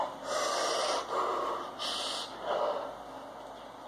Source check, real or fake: real